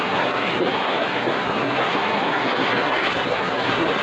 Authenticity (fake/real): fake